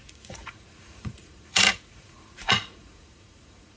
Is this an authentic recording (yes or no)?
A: no